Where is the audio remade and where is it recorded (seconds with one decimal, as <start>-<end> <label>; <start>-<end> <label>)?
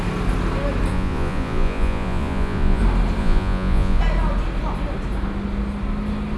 0.0-0.9 recorded; 0.9-2.8 remade; 2.8-3.2 recorded; 3.2-4.0 remade; 4.0-6.4 recorded